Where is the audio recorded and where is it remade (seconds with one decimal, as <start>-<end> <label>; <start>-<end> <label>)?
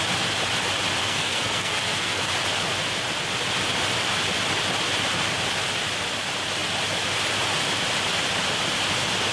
0.0-1.0 recorded; 1.0-2.3 remade; 2.3-9.3 recorded